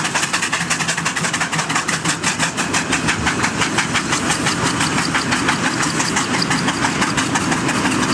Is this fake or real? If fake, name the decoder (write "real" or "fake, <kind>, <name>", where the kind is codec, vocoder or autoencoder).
real